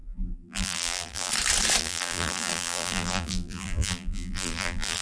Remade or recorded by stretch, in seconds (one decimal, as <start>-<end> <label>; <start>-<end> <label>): 0.0-1.3 remade; 1.3-1.8 recorded; 1.8-5.0 remade